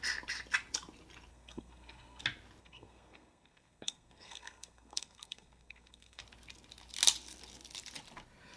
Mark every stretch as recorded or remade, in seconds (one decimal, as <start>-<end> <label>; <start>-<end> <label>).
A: 0.0-1.3 recorded; 1.3-2.2 remade; 2.2-2.6 recorded; 2.6-6.2 remade; 6.2-8.6 recorded